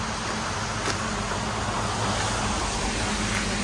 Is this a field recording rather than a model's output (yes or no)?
yes